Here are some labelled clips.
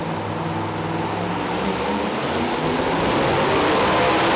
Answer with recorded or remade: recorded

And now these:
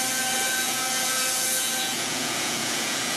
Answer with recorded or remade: remade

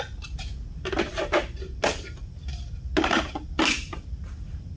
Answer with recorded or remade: recorded